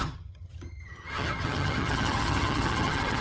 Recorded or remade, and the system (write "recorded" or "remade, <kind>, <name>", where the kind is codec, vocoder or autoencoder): remade, vocoder, HiFi-GAN